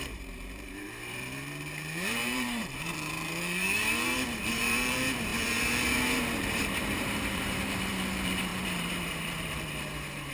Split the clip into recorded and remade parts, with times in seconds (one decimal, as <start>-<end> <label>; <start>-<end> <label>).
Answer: 0.0-5.3 remade; 5.3-6.5 recorded; 6.5-10.3 remade